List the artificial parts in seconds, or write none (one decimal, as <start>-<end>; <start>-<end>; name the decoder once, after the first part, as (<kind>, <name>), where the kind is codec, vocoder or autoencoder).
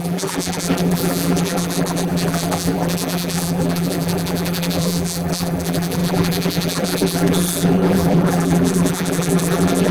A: 0.0-9.9 (vocoder, BigVGAN v2)